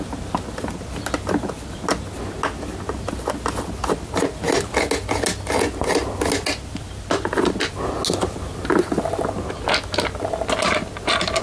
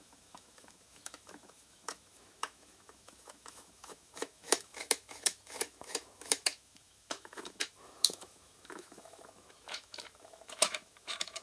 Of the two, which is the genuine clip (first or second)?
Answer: first